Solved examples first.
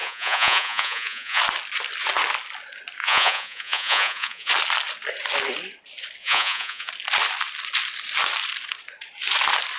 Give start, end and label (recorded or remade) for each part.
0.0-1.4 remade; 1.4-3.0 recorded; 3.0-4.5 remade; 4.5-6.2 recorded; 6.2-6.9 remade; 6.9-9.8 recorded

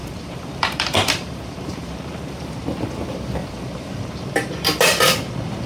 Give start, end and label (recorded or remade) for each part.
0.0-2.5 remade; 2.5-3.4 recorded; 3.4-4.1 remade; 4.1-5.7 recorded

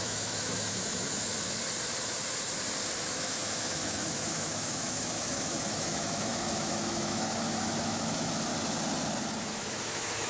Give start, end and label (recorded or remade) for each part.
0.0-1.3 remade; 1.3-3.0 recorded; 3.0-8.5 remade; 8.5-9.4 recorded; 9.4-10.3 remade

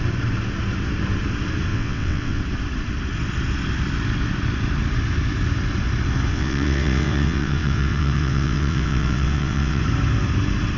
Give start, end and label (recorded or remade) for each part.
0.0-1.7 recorded; 1.7-2.4 remade; 2.4-6.3 recorded; 6.3-9.8 remade; 9.8-10.8 recorded

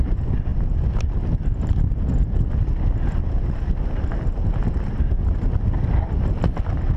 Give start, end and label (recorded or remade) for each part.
0.0-7.0 recorded

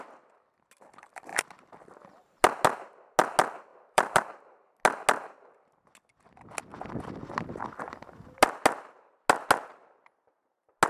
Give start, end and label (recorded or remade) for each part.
0.0-3.7 recorded; 3.7-4.2 remade; 4.2-10.9 recorded

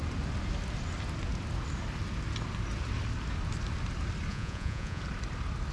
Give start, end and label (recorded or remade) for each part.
0.0-4.3 recorded; 4.3-5.0 remade; 5.0-5.7 recorded